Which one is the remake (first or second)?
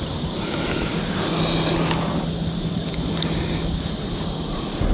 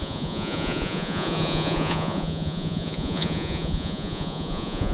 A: second